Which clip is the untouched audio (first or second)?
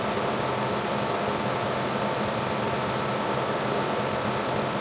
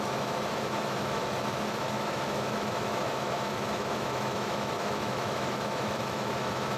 first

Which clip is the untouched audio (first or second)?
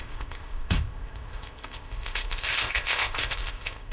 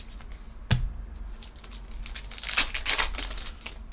second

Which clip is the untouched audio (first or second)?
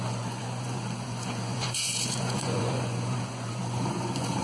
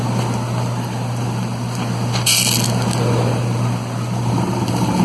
second